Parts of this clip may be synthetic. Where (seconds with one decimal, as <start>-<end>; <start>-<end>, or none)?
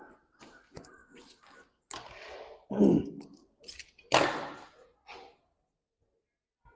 none